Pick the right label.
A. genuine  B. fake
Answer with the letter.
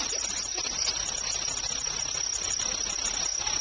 A